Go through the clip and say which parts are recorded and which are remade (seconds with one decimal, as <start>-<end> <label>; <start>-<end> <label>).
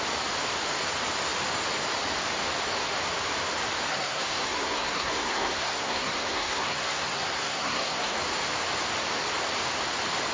0.0-3.9 recorded; 3.9-8.2 remade; 8.2-10.3 recorded